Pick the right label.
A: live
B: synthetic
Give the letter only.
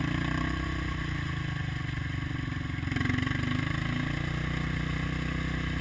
A